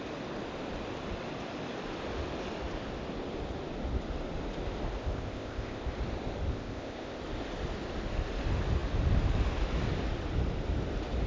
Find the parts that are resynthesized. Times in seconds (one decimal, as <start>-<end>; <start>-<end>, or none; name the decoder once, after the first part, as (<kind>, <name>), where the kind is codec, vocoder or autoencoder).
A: 5.0-5.9 (codec, ZipCodec); 6.5-7.2